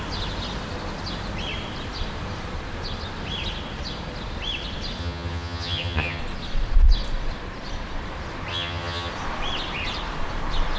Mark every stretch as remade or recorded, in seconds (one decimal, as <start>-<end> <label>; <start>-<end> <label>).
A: 0.0-5.0 recorded; 5.0-6.2 remade; 6.2-8.5 recorded; 8.5-9.1 remade; 9.1-10.8 recorded